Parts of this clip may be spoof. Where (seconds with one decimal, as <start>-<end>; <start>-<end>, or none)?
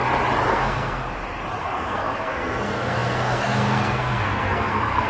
0.5-1.0; 1.6-5.1